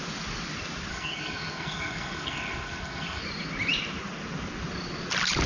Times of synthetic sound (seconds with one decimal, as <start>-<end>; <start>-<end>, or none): 0.9-3.2